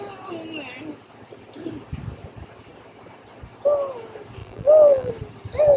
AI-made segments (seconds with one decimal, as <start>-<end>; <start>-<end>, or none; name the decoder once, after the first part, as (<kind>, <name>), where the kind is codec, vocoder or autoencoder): 4.4-5.1 (vocoder, BigVGAN v2)